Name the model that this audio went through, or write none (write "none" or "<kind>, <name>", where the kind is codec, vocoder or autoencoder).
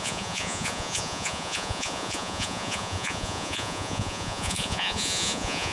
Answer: vocoder, Vocos